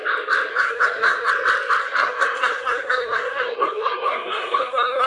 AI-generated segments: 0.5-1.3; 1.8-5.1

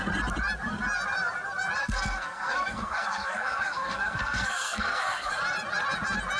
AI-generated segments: 1.8-5.3

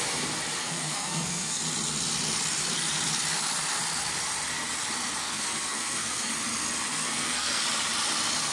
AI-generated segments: 0.6-1.6; 5.2-6.3; 6.9-7.6

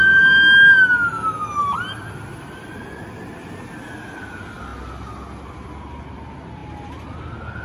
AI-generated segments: none

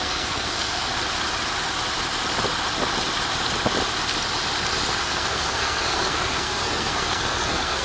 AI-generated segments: 0.0-0.9; 5.0-7.8

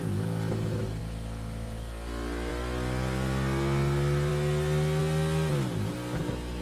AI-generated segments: none

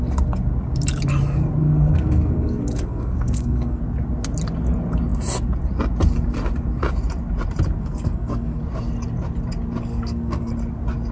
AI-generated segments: 1.6-3.8; 7.8-8.6; 9.9-10.5

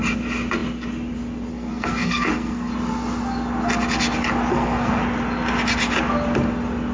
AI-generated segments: 1.5-2.7; 4.5-5.0